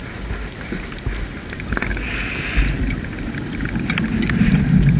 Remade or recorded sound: recorded